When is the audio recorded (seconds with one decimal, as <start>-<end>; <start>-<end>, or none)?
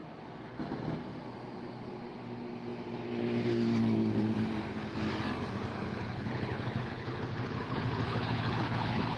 0.0-5.7